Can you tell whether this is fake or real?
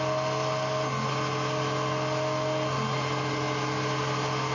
real